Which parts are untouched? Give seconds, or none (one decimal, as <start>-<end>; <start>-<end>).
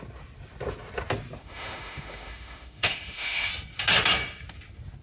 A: 0.0-1.4; 3.5-5.0